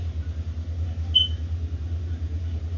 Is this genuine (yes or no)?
yes